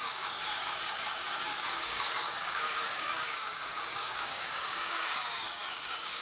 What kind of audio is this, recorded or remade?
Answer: remade